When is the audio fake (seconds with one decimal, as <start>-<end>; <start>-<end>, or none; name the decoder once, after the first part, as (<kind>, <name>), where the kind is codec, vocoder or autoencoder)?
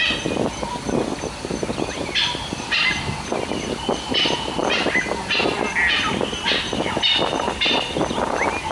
none